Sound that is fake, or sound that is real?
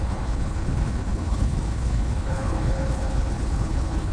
fake